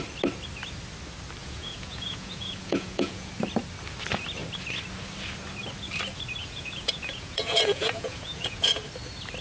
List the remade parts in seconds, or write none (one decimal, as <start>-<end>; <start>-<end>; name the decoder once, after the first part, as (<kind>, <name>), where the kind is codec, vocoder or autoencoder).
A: 1.4-3.3 (vocoder, Vocos); 6.4-8.8